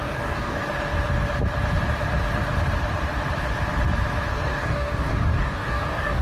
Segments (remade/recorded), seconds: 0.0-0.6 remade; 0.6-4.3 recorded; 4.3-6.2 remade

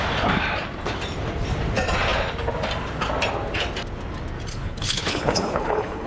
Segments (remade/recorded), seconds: 0.0-4.5 recorded; 4.5-6.1 remade

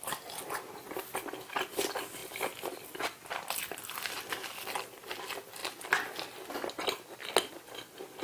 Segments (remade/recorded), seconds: 0.0-8.2 recorded

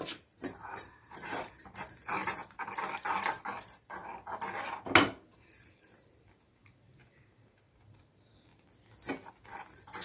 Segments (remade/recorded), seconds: 0.0-2.4 remade; 2.4-3.4 recorded; 3.4-4.0 remade; 4.0-5.3 recorded; 5.3-8.5 remade; 8.5-9.3 recorded; 9.3-10.0 remade